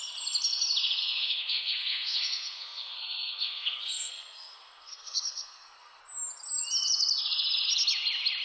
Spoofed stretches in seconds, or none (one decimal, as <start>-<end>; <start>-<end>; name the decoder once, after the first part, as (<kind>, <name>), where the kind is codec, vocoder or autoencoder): 1.0-6.0 (codec, SNAC)